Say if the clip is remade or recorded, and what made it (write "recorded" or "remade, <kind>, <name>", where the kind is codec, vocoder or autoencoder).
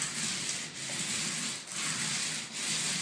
recorded